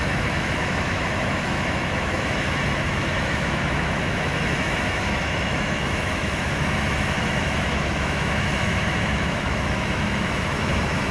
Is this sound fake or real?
fake